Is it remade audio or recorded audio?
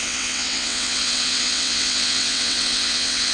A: remade